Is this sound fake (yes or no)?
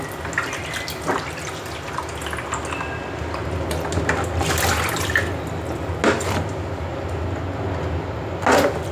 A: no